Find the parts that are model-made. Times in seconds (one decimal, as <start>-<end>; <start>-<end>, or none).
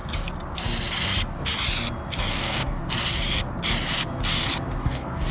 2.3-2.8; 4.8-5.3